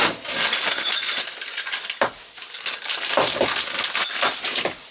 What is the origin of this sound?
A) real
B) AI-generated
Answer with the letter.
A